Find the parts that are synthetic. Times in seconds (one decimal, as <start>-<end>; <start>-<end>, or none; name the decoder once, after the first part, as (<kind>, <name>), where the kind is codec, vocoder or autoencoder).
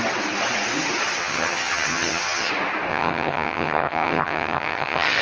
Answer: 1.2-2.5 (vocoder, HiFi-GAN); 2.9-5.2